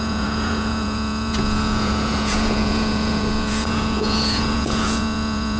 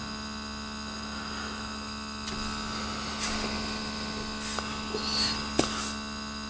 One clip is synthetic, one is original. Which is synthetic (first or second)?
first